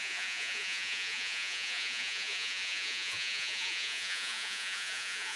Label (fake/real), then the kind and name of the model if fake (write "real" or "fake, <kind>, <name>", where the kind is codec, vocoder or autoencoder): fake, vocoder, Vocos